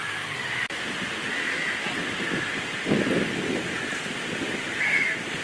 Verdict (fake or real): real